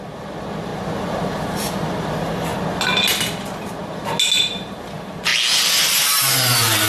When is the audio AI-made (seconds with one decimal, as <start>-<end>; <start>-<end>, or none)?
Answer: 0.0-2.5; 4.5-5.3; 5.8-6.9